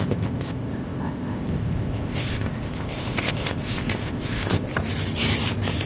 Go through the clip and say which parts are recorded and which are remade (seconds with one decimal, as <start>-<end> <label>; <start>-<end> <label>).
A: 0.0-4.7 remade; 4.7-5.9 recorded